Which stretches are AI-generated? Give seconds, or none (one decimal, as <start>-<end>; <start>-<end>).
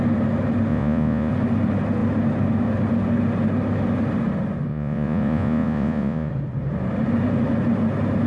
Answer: 0.7-1.3; 4.7-6.3